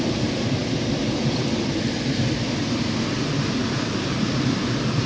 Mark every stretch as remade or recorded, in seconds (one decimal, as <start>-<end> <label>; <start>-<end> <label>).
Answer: 0.0-5.1 recorded